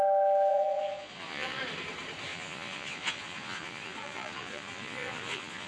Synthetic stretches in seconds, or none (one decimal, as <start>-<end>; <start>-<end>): 0.5-1.6; 2.3-5.7